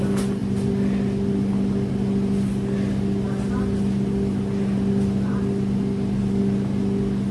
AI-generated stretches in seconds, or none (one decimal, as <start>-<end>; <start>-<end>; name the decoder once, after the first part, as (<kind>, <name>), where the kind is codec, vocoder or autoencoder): none